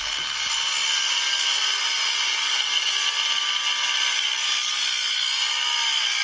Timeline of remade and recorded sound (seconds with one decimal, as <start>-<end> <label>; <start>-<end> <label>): 0.0-6.2 recorded